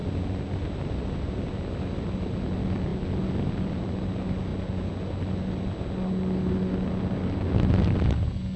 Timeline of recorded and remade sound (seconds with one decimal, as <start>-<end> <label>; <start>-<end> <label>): 0.0-8.6 recorded